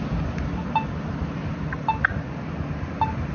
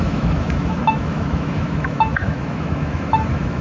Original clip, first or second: first